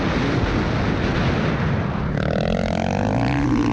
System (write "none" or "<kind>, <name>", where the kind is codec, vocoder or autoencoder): none